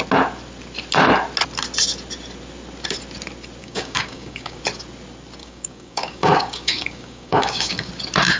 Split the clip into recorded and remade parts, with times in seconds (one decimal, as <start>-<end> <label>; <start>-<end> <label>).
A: 0.0-3.6 recorded; 3.6-4.6 remade; 4.6-5.4 recorded; 5.4-7.9 remade; 7.9-8.4 recorded